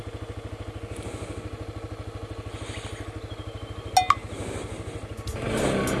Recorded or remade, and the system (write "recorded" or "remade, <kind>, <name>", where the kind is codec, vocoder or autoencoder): recorded